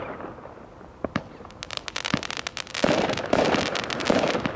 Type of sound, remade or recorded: recorded